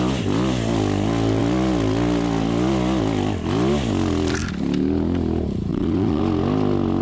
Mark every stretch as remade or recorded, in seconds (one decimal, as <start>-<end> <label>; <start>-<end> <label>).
0.0-5.7 recorded; 5.7-6.2 remade; 6.2-7.0 recorded